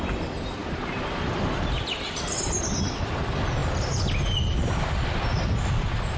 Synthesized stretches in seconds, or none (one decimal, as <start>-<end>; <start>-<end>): 0.0-6.2